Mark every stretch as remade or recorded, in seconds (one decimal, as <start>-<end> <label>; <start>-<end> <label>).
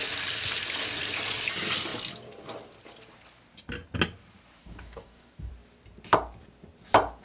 0.0-4.6 recorded; 4.6-5.5 remade; 5.5-7.2 recorded